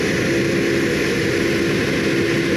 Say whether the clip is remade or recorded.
recorded